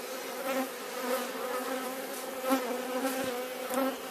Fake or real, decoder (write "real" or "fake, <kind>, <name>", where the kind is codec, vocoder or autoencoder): real